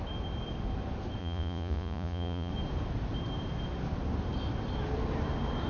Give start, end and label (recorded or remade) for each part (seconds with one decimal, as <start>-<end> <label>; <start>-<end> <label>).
0.0-1.2 recorded; 1.2-2.5 remade; 2.5-5.7 recorded